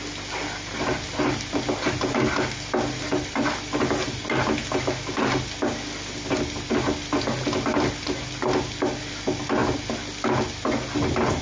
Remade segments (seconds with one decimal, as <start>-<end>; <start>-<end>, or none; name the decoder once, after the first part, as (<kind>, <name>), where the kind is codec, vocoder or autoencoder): none